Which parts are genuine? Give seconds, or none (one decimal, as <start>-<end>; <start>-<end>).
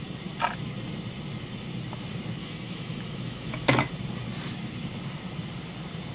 0.0-2.4; 3.9-6.1